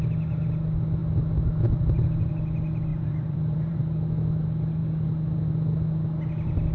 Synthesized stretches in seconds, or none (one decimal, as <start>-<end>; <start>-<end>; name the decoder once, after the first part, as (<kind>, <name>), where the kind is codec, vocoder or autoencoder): 2.9-3.8 (vocoder, BigVGAN v2)